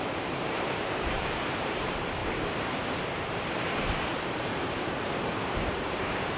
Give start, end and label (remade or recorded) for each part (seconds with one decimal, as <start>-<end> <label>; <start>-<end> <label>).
0.0-6.4 remade